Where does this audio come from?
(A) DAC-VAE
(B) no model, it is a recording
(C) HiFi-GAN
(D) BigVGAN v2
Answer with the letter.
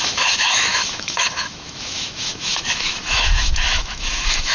A